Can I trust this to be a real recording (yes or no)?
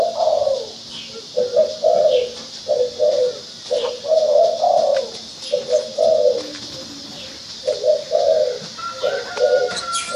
yes